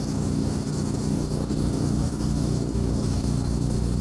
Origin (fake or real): fake